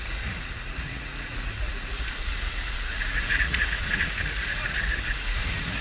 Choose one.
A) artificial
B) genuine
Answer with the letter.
A